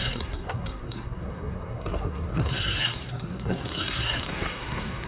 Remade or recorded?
remade